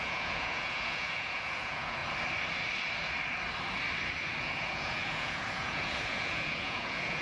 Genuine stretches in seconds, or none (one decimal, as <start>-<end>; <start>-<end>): 2.0-4.4